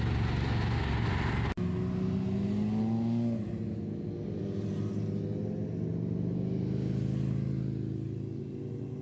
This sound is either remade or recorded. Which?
recorded